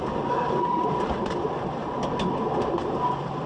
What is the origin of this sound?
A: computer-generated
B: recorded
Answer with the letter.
B